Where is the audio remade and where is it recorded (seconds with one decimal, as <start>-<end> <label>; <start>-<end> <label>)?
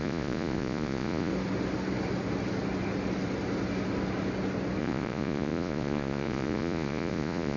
0.0-1.3 remade; 1.3-4.8 recorded; 4.8-7.6 remade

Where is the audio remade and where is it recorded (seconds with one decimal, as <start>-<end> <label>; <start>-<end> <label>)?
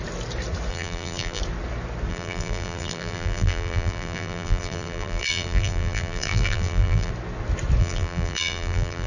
0.0-0.7 recorded; 0.7-1.4 remade; 1.4-2.1 recorded; 2.1-7.1 remade; 7.1-7.8 recorded; 7.8-9.1 remade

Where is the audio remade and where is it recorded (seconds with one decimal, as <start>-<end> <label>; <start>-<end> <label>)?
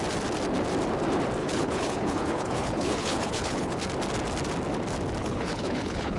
0.0-1.4 recorded; 1.4-3.8 remade; 3.8-5.2 recorded; 5.2-6.2 remade